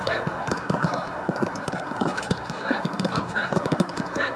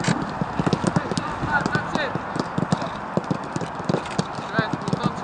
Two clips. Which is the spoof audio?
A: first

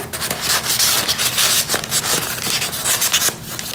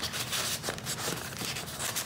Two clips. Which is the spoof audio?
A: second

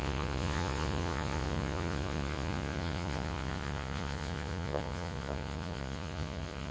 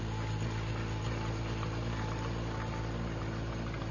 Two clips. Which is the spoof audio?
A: first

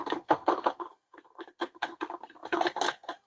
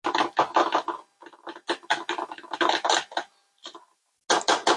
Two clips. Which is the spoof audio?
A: first